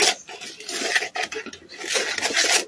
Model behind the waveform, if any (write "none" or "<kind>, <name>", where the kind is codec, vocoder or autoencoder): none